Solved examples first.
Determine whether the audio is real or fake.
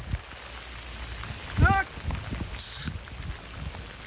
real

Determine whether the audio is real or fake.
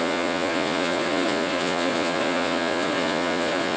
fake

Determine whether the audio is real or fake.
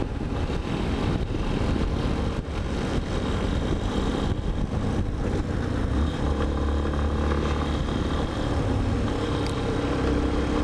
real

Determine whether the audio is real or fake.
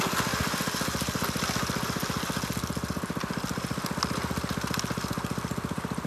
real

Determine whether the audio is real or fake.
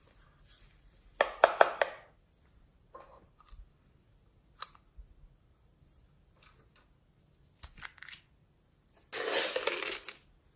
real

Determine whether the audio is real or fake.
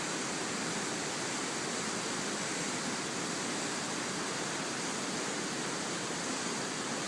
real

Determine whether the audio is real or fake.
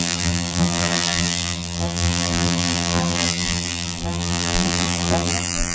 fake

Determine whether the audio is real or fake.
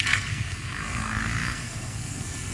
fake